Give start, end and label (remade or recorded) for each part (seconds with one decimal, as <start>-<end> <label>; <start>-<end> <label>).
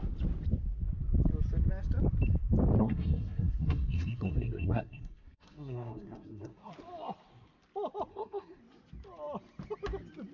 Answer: 0.0-2.8 recorded; 2.8-6.7 remade; 6.7-8.1 recorded; 8.1-8.6 remade; 8.6-10.3 recorded